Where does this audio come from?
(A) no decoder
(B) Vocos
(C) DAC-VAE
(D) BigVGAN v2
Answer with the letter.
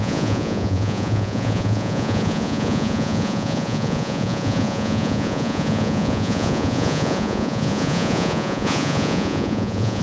B